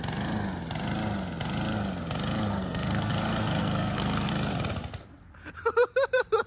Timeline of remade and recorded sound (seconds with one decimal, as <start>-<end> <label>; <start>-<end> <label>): 0.0-2.5 recorded; 2.5-3.1 remade; 3.1-3.6 recorded; 3.6-4.3 remade; 4.3-6.5 recorded